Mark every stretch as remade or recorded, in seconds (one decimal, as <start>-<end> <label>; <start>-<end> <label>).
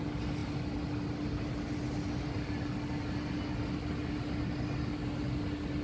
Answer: 0.0-5.8 recorded